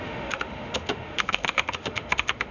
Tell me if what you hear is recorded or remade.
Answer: remade